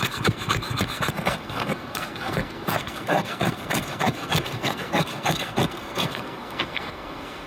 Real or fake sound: fake